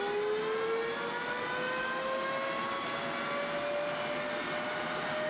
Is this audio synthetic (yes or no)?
no